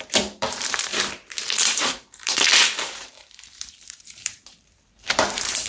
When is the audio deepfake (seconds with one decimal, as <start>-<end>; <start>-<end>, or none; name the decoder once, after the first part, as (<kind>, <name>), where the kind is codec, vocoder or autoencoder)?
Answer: 0.0-5.7 (vocoder, BigVGAN v2)